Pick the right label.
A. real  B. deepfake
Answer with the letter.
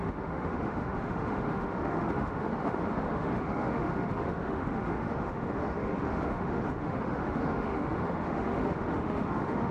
B